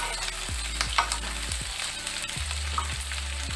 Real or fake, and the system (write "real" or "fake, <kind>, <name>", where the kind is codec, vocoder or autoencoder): real